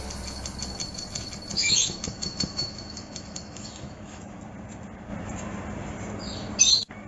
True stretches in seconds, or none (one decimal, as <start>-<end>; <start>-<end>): 0.0-1.6; 4.4-7.1